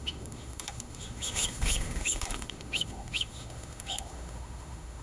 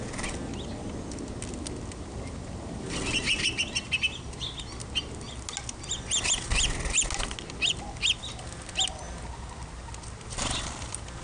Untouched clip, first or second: second